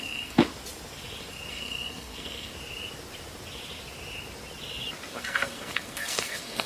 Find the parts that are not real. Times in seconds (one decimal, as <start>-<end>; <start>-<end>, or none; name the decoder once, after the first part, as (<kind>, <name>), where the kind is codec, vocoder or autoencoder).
0.0-0.5 (codec, SNAC); 1.5-2.5; 5.1-6.7